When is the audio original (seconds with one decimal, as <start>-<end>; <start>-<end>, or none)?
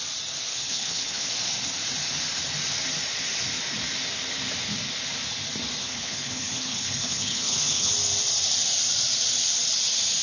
0.0-0.5; 1.3-5.8; 7.9-10.2